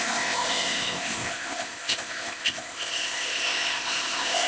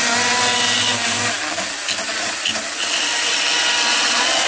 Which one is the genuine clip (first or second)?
second